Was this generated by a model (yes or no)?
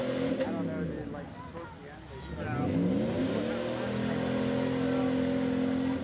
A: no